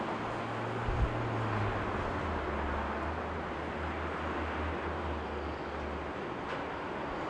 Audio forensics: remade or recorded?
recorded